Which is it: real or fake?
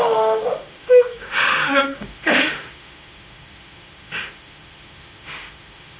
fake